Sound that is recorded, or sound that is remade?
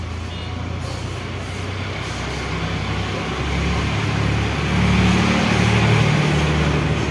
recorded